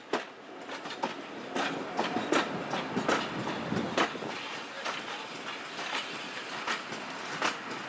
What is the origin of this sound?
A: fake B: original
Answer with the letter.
B